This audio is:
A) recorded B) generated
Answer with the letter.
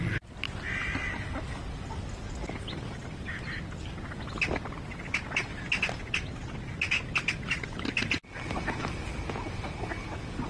A